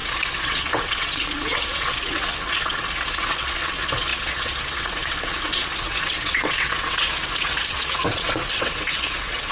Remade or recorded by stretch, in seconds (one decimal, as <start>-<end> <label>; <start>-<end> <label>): 0.0-9.5 remade